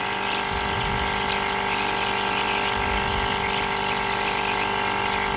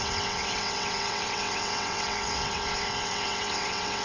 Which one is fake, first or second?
second